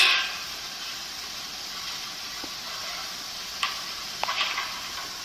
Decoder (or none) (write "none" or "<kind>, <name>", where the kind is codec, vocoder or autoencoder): none